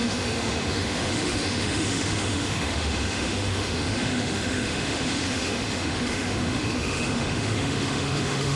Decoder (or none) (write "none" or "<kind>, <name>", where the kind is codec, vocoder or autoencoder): autoencoder, DAC-VAE